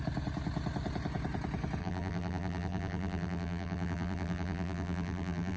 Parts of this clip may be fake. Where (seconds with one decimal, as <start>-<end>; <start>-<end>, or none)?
1.8-5.6